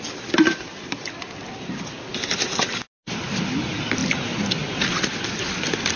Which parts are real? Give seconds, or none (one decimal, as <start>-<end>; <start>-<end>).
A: 0.0-6.0